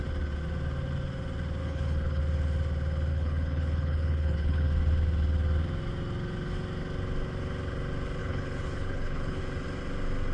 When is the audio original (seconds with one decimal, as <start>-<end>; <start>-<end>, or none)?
0.0-1.6; 2.2-3.1; 4.7-8.2; 9.4-10.3

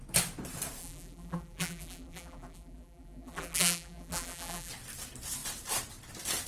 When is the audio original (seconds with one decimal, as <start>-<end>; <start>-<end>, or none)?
0.0-0.8; 4.7-6.5

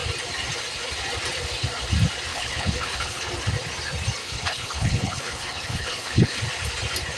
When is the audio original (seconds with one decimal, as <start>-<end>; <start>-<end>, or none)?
0.0-2.3; 3.3-4.2; 6.4-7.2